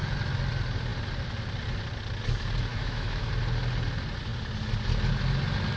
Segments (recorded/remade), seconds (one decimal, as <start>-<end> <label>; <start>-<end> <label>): 0.0-2.7 recorded; 2.7-3.3 remade; 3.3-5.8 recorded